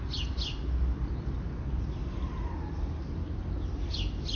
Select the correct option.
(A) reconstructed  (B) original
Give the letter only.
B